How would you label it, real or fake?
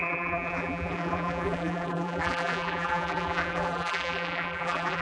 fake